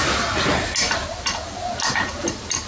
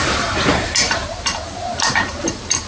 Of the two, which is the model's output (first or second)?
second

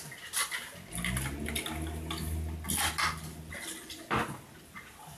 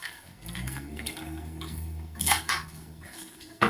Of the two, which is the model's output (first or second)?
second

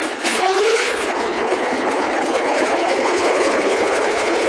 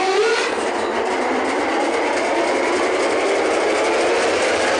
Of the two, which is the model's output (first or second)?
first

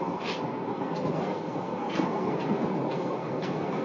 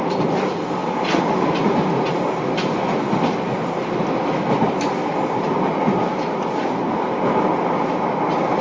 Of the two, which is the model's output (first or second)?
first